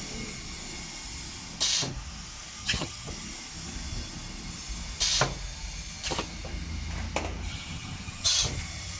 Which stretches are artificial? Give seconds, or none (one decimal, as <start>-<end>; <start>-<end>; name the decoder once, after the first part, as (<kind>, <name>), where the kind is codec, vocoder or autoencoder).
2.6-3.1 (vocoder, HiFi-GAN); 7.5-8.4

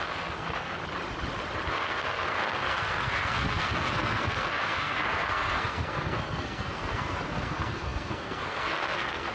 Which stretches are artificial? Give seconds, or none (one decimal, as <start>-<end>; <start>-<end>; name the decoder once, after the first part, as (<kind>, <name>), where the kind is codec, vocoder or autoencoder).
0.0-0.8 (codec, SNAC); 1.7-9.3

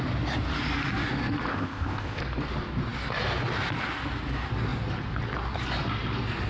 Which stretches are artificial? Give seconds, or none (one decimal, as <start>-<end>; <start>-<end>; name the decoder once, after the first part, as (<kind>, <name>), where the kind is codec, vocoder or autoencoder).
1.5-2.2 (codec, ZipCodec)

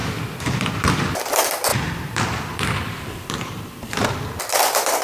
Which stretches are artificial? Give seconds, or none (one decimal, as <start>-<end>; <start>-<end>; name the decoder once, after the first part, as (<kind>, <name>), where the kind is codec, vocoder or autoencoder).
0.0-5.0 (vocoder, BigVGAN v2)

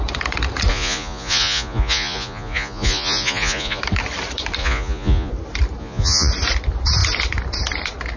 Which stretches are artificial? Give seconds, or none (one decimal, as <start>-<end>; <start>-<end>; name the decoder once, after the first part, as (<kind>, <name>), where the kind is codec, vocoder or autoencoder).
0.7-3.8 (vocoder, Vocos); 4.6-5.3; 5.8-6.3

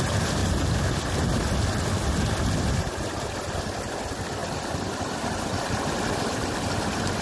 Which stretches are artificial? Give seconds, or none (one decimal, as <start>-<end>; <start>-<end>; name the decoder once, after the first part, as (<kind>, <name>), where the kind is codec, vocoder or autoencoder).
none